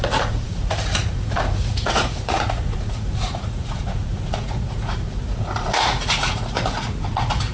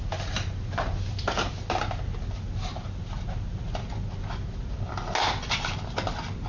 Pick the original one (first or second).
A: second